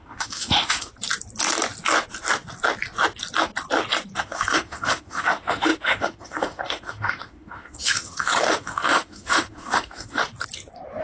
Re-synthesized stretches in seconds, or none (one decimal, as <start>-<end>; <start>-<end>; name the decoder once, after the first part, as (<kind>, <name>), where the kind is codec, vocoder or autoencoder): 0.0-0.9 (autoencoder, DAC-VAE); 4.2-10.2